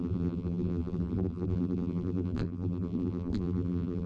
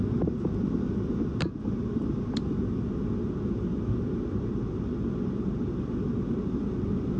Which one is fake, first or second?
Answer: first